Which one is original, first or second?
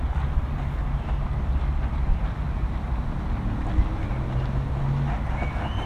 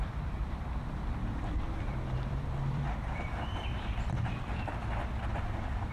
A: first